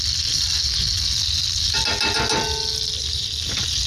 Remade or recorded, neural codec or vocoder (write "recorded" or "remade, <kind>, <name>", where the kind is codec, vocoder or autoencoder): recorded